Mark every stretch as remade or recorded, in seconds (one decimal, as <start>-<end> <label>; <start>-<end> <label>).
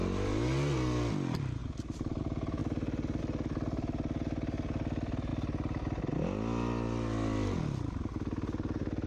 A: 0.0-9.1 recorded